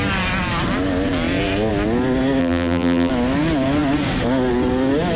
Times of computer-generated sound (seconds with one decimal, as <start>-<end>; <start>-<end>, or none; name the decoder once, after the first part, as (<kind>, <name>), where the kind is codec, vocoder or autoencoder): 2.4-3.1 (vocoder, BigVGAN v2)

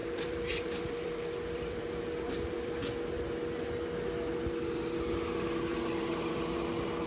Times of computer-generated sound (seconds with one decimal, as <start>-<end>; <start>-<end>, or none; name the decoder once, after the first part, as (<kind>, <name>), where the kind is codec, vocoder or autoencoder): 0.0-2.8 (vocoder, BigVGAN v2); 5.7-6.6

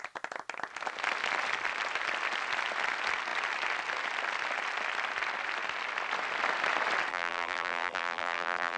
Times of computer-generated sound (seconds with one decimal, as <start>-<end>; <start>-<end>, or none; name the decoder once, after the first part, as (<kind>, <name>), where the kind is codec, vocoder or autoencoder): 7.1-8.8 (vocoder, BigVGAN v2)